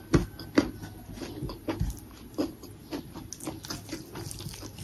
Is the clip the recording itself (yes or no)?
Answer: yes